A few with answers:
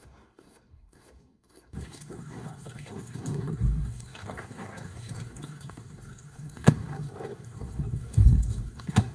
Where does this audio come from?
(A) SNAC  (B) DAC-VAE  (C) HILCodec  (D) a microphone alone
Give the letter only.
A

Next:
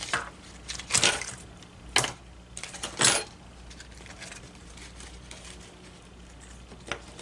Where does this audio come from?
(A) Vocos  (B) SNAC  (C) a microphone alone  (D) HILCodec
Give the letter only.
C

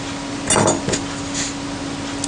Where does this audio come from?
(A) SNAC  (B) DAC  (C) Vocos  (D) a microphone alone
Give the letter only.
D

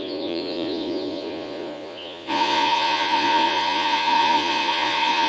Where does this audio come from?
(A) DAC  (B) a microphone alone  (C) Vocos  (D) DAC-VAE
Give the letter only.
C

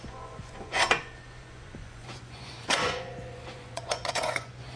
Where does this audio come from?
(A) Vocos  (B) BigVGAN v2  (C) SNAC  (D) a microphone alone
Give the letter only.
A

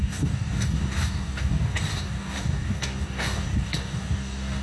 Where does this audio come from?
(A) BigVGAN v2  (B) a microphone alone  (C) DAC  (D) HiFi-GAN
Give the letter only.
C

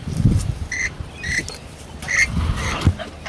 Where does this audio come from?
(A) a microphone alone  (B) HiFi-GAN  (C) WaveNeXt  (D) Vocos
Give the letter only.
A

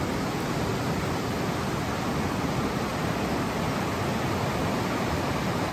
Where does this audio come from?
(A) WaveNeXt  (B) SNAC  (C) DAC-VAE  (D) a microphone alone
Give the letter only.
D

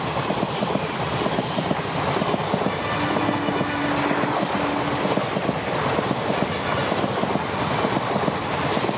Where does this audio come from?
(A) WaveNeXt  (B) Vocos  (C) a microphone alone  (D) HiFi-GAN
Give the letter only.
C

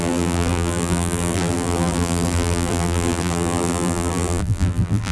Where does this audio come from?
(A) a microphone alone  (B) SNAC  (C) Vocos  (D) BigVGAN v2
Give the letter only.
D